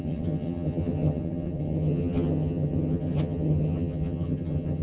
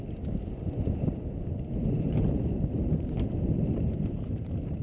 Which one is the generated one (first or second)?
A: first